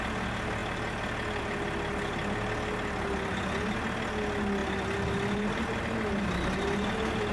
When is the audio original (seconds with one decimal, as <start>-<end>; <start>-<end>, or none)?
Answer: 0.0-0.6; 1.4-7.3